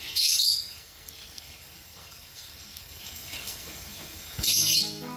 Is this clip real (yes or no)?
no